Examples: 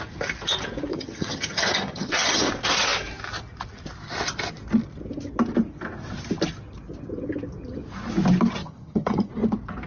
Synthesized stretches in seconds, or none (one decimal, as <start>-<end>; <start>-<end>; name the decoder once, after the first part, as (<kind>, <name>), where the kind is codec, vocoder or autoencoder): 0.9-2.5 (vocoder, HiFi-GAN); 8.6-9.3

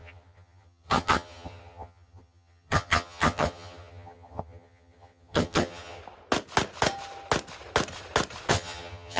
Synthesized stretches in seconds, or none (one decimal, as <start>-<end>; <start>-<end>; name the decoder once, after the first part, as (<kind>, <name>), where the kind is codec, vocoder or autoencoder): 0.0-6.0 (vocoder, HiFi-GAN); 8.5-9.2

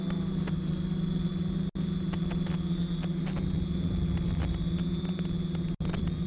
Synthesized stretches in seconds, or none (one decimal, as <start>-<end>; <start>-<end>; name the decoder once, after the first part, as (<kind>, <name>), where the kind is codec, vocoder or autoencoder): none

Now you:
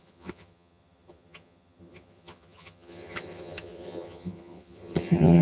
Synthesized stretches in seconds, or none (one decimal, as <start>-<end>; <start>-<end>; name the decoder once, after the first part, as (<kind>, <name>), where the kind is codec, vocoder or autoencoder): 0.0-5.4 (vocoder, HiFi-GAN)

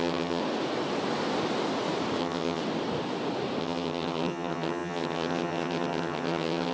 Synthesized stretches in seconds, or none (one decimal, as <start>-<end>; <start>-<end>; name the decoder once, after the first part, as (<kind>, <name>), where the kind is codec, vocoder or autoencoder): 0.0-0.4 (vocoder, HiFi-GAN); 2.2-2.6; 3.6-6.7

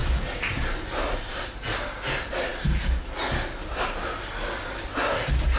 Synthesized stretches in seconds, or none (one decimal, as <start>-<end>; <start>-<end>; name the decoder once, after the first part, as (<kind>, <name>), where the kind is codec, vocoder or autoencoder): none

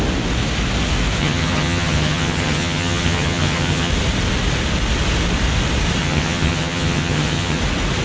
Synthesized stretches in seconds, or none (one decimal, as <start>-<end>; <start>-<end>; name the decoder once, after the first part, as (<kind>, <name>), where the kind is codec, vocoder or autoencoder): 1.2-3.9 (vocoder, HiFi-GAN); 6.0-7.6

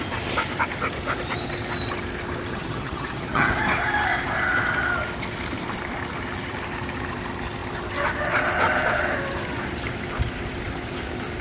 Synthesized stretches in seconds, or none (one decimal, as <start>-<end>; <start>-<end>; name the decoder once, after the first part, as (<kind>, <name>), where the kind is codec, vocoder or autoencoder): 2.5-3.5 (vocoder, HiFi-GAN)